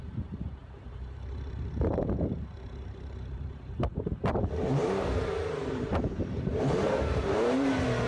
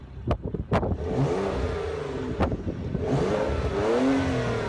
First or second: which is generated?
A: first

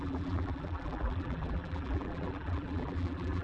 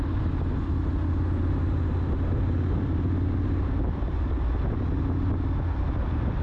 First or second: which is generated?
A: first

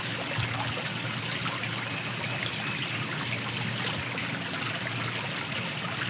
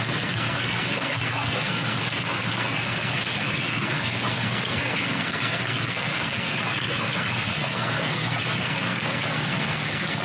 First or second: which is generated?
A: second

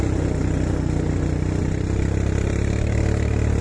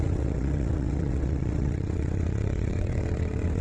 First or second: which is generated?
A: second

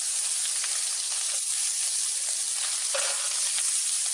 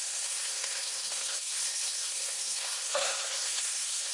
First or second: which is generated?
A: second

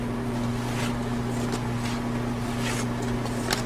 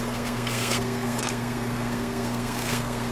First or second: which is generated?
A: second